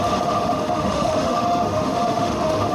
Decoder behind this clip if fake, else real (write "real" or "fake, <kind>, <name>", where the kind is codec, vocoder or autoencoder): fake, autoencoder, DAC-VAE